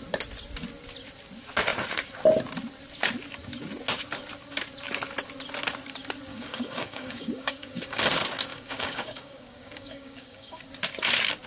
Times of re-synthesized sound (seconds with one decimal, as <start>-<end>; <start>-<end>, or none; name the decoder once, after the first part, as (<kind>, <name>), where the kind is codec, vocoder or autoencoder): 6.3-8.0 (codec, DAC); 8.5-10.6